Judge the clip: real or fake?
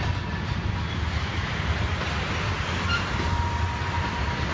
real